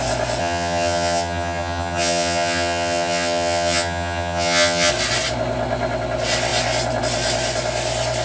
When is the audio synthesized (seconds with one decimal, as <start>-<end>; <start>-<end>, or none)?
0.4-4.9